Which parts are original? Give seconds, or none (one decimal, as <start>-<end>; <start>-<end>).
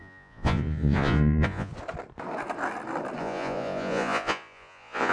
1.7-3.2